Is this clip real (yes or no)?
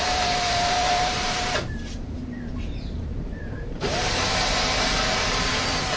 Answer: no